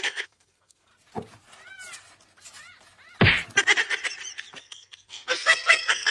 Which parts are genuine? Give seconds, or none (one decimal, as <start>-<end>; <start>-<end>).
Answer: 0.9-4.6